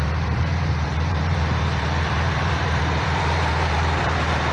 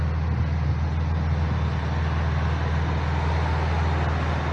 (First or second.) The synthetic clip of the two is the first